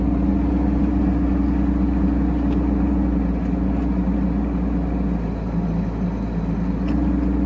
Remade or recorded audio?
recorded